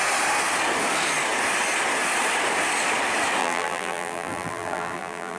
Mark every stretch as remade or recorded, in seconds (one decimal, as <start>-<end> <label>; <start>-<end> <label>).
0.0-3.4 recorded; 3.4-5.4 remade